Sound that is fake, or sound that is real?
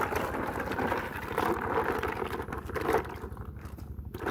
real